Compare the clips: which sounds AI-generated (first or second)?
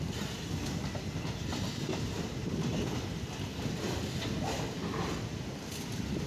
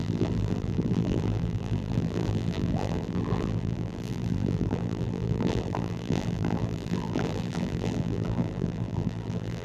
second